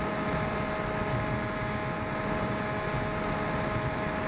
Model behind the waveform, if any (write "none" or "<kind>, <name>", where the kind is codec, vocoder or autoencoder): none